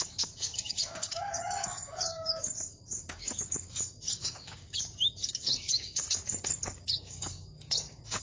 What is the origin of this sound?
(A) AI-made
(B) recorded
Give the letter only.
A